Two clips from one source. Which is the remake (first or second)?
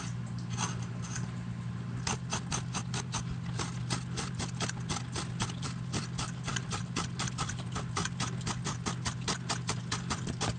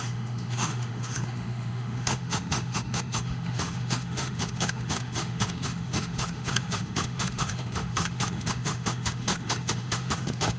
second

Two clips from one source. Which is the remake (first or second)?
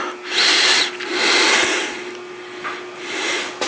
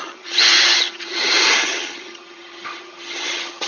second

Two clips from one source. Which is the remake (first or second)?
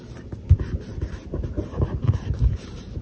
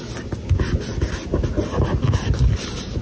first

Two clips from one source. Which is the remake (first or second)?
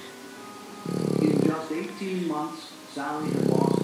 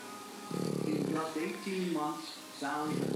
second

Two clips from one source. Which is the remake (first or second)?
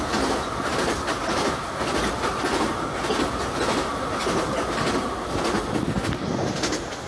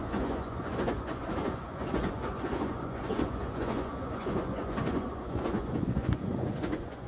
second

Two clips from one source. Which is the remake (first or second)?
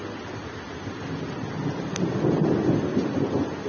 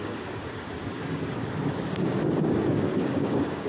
second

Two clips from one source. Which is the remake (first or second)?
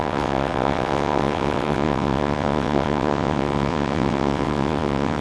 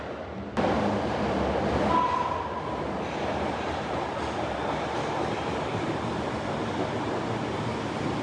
first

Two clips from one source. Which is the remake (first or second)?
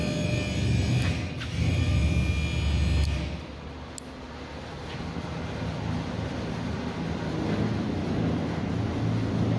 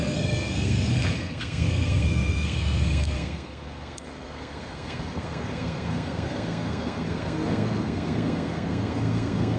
second